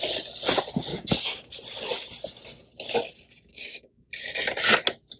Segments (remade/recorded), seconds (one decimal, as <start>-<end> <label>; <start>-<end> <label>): 0.0-0.9 recorded; 0.9-1.5 remade; 1.5-3.5 recorded; 3.5-4.1 remade; 4.1-5.2 recorded